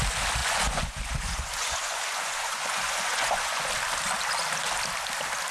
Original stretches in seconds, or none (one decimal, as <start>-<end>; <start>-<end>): 0.0-0.4; 3.7-5.5